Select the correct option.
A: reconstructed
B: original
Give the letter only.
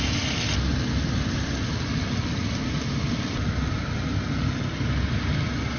B